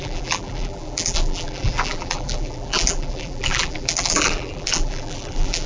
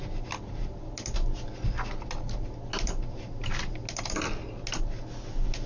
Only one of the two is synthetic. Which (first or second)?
first